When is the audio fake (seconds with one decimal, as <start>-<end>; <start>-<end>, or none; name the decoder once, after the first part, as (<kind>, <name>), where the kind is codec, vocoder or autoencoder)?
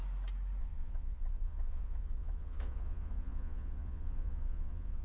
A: 0.6-5.0 (vocoder, Vocos)